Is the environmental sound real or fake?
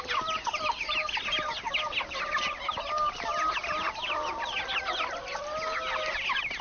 real